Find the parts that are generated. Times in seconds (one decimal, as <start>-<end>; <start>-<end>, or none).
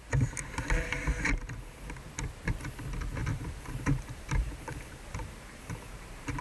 3.2-6.4